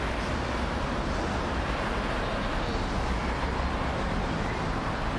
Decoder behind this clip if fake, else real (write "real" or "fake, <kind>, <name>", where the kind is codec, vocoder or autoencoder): real